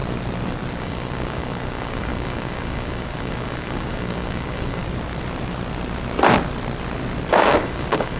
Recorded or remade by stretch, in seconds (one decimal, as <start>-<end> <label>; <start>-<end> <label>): 0.0-0.8 recorded; 0.8-4.8 remade; 4.8-7.3 recorded; 7.3-8.2 remade